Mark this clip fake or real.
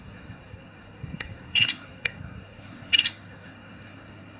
fake